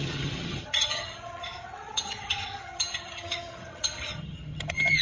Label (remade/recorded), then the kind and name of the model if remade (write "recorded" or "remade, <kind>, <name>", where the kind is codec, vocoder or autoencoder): remade, vocoder, HiFi-GAN